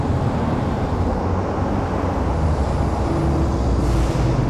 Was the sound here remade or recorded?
recorded